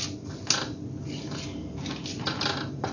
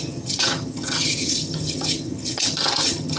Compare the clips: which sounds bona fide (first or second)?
first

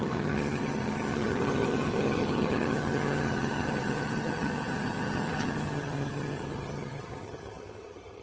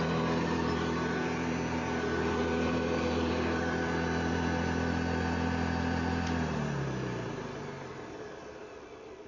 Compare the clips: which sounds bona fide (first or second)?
second